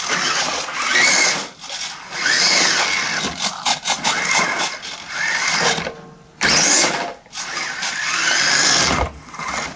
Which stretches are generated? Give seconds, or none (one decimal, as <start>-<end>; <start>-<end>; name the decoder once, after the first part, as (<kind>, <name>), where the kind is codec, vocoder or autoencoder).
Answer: none